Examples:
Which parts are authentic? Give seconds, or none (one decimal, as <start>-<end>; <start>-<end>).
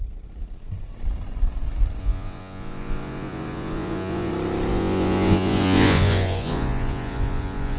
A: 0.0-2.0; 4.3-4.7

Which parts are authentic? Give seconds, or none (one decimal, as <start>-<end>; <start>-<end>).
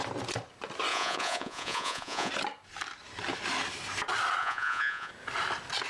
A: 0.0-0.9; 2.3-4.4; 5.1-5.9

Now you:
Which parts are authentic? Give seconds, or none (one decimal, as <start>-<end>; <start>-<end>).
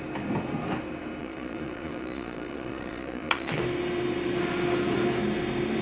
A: 0.0-1.2; 3.6-5.8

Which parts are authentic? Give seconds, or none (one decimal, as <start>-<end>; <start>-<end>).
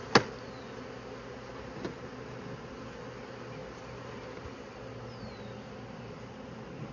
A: 0.0-6.9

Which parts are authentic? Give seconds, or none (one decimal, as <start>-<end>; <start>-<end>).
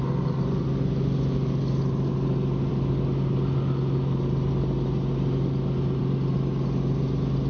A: 0.0-7.5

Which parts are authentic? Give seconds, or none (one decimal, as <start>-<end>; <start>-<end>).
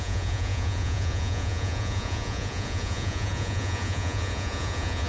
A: none